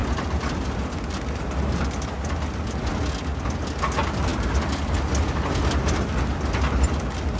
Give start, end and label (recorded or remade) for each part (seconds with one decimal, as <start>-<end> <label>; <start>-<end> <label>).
0.0-7.4 recorded